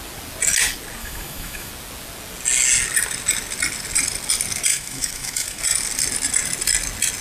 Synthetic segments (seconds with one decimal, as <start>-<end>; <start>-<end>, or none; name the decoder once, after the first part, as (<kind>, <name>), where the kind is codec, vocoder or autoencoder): 1.0-1.7 (autoencoder, DAC-VAE); 4.7-5.6